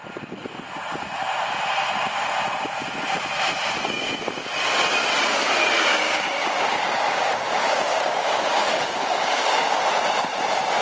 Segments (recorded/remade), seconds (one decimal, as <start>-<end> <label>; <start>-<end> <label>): 0.0-5.9 recorded; 5.9-9.8 remade; 9.8-10.8 recorded